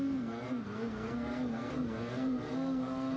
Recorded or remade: remade